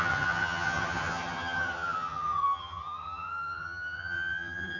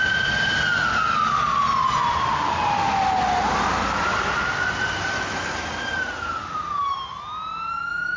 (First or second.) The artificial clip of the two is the first